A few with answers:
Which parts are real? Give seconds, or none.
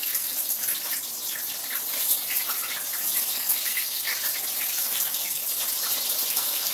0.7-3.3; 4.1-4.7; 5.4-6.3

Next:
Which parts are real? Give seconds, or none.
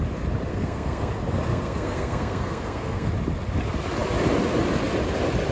0.0-0.5; 1.1-1.5; 3.1-5.5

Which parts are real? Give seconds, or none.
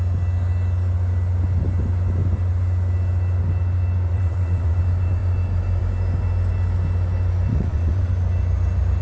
0.0-4.1; 4.8-7.5; 8.1-9.0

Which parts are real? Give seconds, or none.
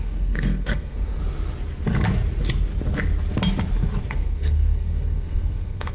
1.2-4.1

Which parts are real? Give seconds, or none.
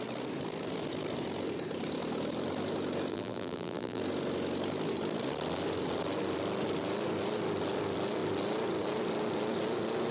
0.0-3.1; 4.0-10.1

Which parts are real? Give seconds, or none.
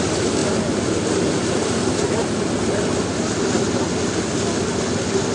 0.0-5.3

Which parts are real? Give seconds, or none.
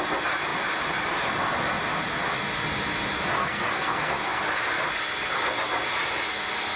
0.0-3.4; 4.4-6.8